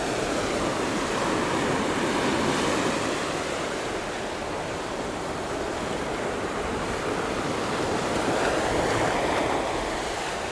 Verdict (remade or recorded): recorded